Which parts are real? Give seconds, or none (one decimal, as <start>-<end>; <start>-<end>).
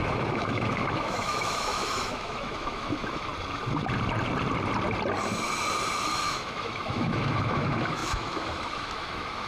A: 3.3-6.1